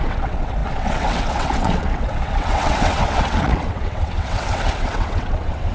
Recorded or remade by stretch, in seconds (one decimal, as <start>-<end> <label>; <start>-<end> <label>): 0.0-5.7 remade